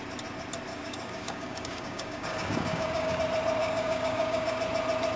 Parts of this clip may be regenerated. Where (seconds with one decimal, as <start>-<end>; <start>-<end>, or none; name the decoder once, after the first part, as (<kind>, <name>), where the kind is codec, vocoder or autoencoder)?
0.7-3.2 (codec, DAC); 3.6-4.6